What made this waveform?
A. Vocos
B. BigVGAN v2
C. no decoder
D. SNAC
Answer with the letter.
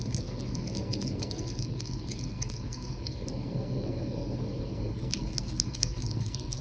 D